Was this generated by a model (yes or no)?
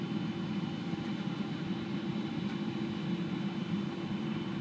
no